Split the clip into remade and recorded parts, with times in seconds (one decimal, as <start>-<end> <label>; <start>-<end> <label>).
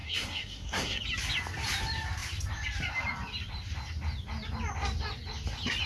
0.0-1.0 remade; 1.0-5.9 recorded